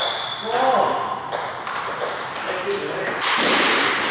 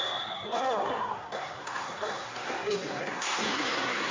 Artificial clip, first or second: second